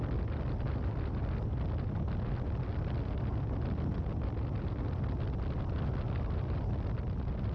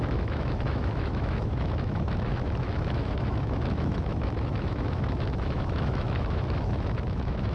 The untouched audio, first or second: first